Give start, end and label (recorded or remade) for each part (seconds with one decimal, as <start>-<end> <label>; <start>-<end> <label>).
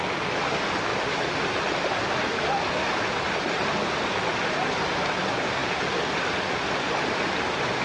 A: 0.0-7.8 recorded